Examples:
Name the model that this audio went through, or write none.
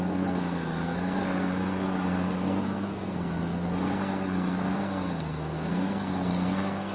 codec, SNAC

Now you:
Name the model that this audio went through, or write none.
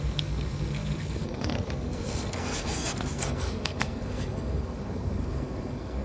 codec, SNAC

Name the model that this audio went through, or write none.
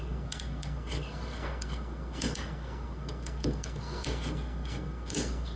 codec, SNAC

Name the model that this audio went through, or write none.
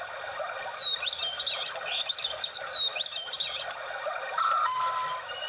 none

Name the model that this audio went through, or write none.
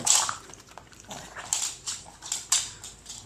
none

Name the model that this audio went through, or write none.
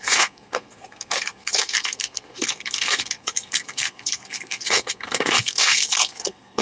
codec, SNAC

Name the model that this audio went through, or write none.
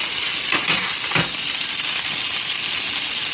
none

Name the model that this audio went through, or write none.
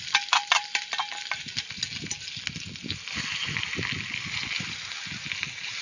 none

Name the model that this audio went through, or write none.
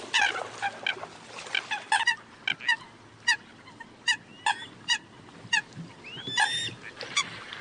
none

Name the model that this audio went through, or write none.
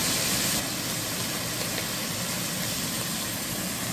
none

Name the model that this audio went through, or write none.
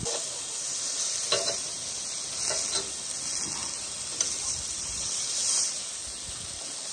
none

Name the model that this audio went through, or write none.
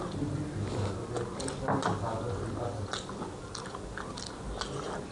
none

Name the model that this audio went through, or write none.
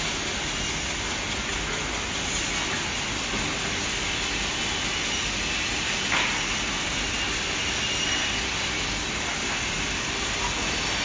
none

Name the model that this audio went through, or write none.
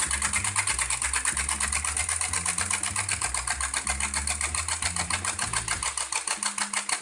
none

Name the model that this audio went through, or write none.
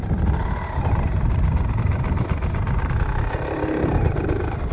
none